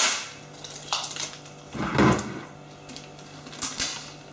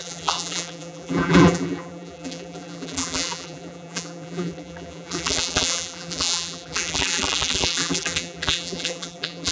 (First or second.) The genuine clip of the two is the first